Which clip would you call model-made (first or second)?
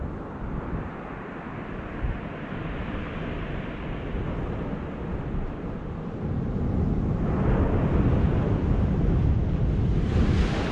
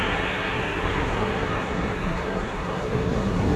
second